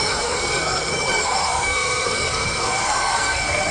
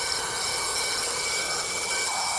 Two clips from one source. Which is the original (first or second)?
second